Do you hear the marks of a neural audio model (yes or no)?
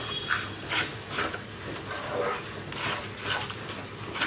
no